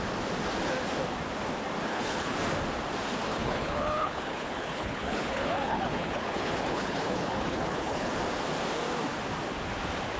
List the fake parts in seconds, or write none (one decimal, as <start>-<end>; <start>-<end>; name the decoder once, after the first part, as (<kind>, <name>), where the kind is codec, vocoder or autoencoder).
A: 1.9-2.4 (codec, HILCodec); 3.3-8.1